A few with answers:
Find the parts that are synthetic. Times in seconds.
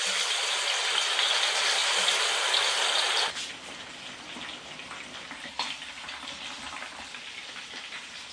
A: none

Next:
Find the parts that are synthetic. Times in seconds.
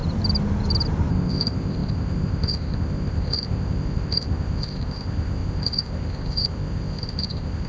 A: 1.1-7.7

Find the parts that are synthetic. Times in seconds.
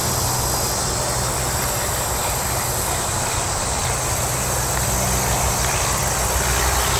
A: none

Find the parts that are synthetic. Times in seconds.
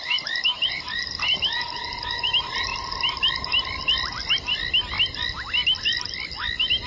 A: 0.0-2.7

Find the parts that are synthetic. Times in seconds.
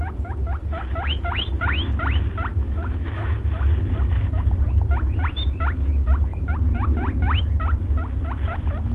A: 2.5-3.5